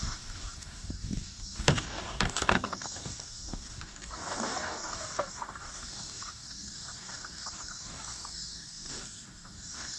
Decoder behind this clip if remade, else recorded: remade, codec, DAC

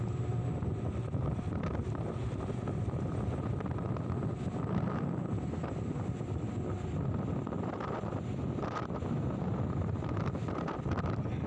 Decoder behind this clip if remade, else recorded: remade, vocoder, BigVGAN v2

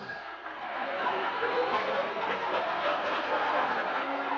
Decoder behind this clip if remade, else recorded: remade, codec, SNAC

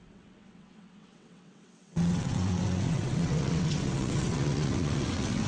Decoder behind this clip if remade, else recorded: remade, vocoder, WaveNeXt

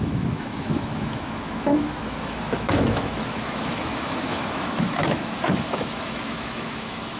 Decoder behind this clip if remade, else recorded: remade, autoencoder, DAC-VAE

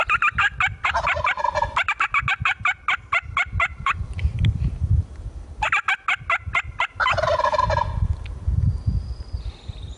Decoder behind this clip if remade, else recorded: recorded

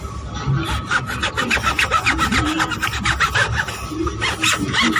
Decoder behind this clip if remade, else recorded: recorded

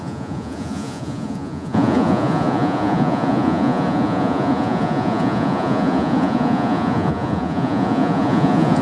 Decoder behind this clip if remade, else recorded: remade, vocoder, Vocos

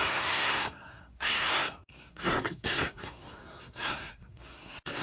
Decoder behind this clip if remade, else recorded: remade, codec, SNAC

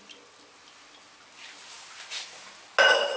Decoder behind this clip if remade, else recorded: recorded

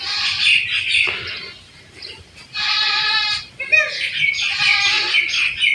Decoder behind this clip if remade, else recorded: recorded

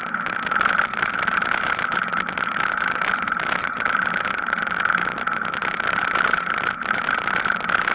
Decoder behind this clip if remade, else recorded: recorded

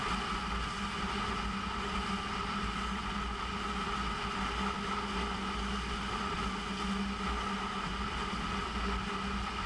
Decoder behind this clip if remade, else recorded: recorded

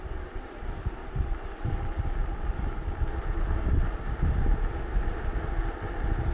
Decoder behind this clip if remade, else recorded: remade, vocoder, BigVGAN v2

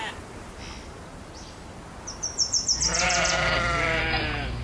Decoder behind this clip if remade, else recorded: remade, vocoder, BigVGAN v2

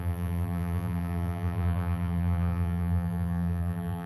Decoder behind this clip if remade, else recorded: remade, vocoder, BigVGAN v2